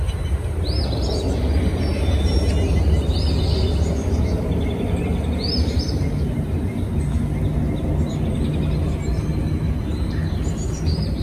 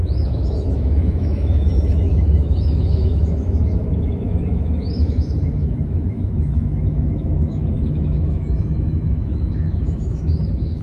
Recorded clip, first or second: first